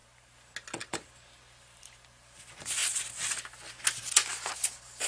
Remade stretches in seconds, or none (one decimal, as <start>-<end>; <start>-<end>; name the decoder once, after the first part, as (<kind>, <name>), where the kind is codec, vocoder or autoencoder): 0.8-2.8 (vocoder, BigVGAN v2); 4.5-5.1